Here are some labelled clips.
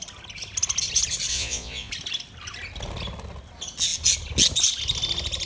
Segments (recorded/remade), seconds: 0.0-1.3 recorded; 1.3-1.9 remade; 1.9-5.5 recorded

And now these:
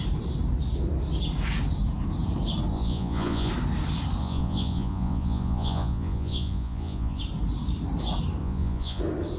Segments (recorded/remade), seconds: 0.0-2.7 recorded; 2.7-3.5 remade; 3.5-4.2 recorded; 4.2-7.2 remade; 7.2-8.4 recorded; 8.4-9.0 remade; 9.0-9.4 recorded

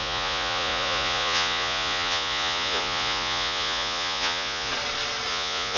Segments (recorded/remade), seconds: 0.0-4.7 remade; 4.7-5.3 recorded; 5.3-5.8 remade

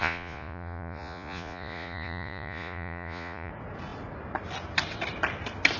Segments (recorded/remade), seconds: 0.0-3.5 remade; 3.5-5.8 recorded

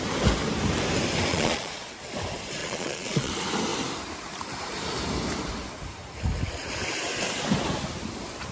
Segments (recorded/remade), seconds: 0.0-1.3 recorded; 1.3-1.9 remade; 1.9-2.6 recorded; 2.6-3.3 remade; 3.3-8.5 recorded

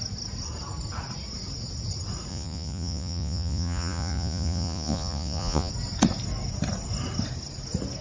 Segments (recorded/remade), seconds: 0.0-2.3 recorded; 2.3-5.7 remade; 5.7-8.0 recorded